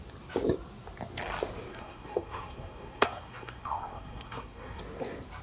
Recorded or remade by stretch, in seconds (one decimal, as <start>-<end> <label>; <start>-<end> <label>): 0.0-1.7 recorded; 1.7-4.8 remade; 4.8-5.4 recorded